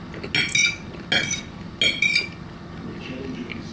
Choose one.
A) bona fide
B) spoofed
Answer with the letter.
A